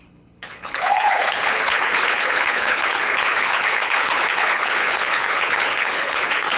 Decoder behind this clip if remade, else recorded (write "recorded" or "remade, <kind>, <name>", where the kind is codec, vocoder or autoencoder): remade, codec, HILCodec